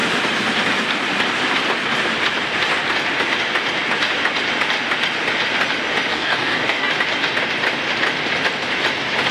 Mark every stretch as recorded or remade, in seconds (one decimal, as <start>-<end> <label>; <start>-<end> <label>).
0.0-6.1 recorded; 6.1-6.9 remade; 6.9-9.3 recorded